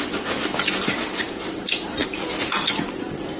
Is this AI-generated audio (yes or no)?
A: no